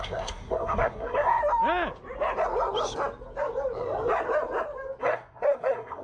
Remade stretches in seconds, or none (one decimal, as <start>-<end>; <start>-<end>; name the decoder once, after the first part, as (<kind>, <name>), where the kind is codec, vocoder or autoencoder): 0.0-1.4 (codec, SNAC); 5.0-6.0